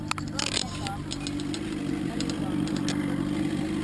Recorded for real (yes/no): yes